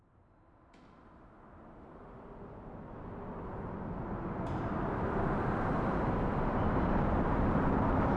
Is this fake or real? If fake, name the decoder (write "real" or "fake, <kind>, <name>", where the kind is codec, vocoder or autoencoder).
real